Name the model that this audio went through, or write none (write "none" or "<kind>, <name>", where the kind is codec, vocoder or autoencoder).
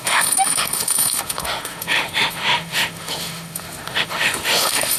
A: autoencoder, DAC-VAE